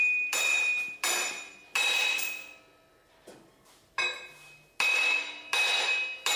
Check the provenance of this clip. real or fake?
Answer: real